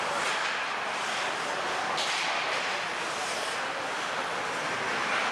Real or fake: real